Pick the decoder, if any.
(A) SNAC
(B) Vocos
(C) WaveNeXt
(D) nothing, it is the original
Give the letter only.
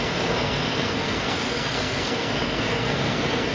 A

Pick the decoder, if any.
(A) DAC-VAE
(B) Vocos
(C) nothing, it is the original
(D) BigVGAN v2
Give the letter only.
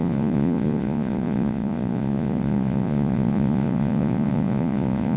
B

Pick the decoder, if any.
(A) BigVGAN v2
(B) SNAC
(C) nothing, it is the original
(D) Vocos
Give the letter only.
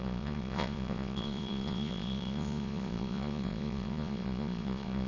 D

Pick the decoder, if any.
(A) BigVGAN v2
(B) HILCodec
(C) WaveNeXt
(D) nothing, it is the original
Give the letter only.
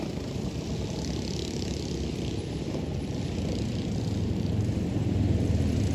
A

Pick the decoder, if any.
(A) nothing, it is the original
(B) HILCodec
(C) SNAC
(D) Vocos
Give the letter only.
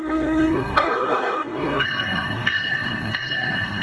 C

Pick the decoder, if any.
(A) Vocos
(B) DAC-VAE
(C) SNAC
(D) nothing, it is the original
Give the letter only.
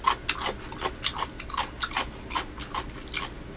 D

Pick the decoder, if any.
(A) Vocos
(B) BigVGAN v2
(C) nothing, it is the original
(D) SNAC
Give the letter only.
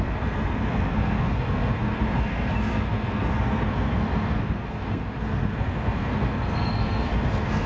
D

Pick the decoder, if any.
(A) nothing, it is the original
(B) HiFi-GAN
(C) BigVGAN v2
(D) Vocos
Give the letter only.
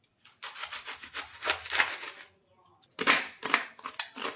A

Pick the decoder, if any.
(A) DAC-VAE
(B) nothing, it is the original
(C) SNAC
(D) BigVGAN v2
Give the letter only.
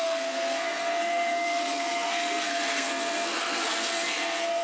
C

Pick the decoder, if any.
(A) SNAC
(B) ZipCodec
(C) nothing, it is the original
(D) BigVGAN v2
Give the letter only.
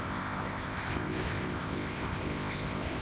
B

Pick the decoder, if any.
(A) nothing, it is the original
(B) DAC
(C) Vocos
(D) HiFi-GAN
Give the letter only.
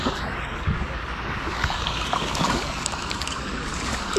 B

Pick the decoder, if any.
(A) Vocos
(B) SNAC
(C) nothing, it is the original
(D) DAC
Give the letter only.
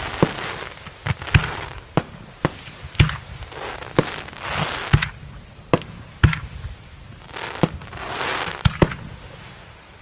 C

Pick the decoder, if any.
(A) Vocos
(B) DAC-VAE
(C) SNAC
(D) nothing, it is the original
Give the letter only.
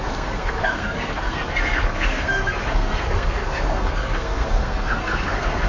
C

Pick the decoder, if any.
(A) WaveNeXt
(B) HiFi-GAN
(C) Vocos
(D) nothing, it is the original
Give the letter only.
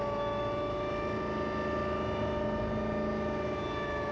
D